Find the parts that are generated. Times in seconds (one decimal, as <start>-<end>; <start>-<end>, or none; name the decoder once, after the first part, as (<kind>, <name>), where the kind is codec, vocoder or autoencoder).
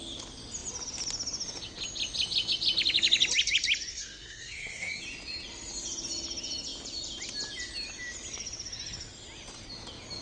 3.9-5.0 (codec, SNAC)